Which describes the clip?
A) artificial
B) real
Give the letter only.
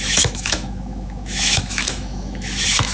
A